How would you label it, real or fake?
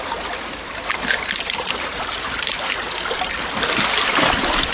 real